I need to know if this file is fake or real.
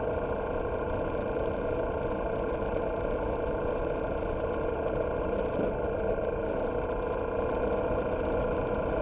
real